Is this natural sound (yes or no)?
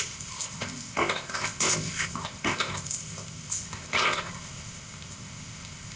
no